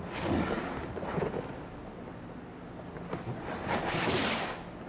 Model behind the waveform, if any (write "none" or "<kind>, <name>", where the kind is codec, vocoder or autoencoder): none